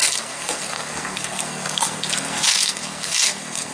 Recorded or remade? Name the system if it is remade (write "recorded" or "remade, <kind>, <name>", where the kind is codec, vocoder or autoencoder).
remade, codec, SNAC